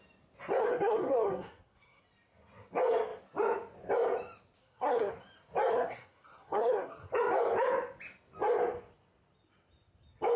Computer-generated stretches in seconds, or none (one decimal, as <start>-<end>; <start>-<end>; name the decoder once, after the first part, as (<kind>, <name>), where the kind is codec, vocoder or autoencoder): 0.6-2.0 (codec, SNAC); 4.6-5.1; 5.7-7.1